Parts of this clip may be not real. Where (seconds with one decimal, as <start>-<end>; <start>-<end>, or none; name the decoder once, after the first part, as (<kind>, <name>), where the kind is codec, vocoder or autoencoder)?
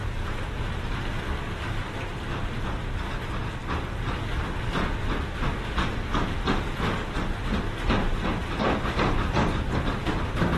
none